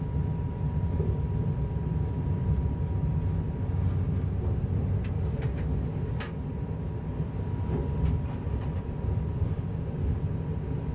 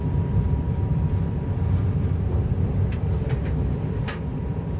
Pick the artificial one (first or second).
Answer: second